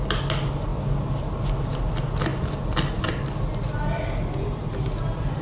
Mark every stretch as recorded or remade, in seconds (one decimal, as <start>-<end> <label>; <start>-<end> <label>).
0.0-5.4 recorded